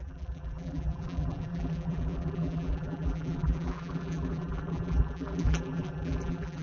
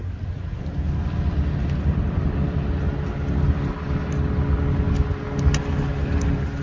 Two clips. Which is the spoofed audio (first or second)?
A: first